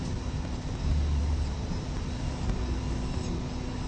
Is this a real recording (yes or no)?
yes